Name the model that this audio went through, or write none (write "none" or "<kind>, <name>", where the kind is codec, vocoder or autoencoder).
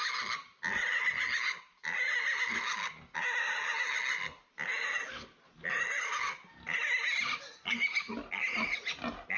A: none